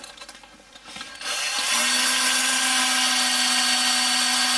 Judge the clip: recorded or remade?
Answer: recorded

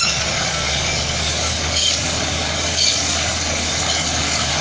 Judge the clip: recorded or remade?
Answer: remade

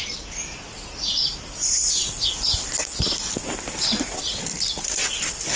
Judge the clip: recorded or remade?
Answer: recorded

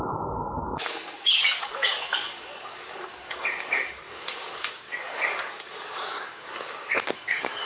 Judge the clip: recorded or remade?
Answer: remade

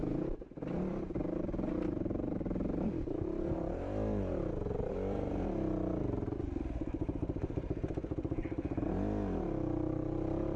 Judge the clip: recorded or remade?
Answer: recorded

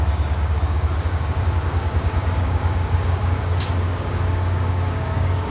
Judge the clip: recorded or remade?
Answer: remade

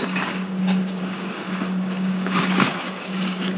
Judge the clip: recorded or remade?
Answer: remade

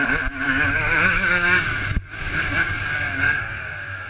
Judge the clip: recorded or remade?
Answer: remade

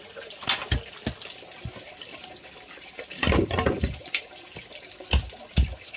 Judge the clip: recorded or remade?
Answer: recorded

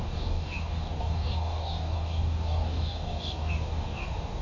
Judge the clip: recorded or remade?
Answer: remade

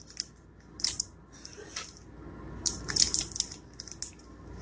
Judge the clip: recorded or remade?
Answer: recorded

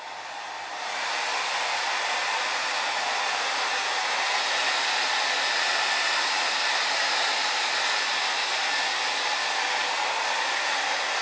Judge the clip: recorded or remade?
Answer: recorded